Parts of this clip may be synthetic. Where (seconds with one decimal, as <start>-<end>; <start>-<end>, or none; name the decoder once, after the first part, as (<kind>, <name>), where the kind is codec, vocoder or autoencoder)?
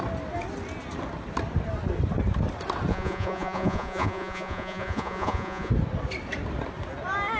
2.9-5.7 (vocoder, Vocos)